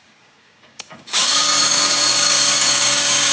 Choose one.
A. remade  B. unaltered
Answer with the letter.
A